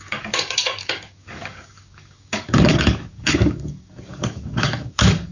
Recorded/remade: remade